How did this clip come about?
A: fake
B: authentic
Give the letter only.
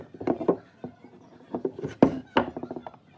B